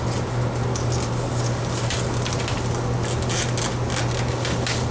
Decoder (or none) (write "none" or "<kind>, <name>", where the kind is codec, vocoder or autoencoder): none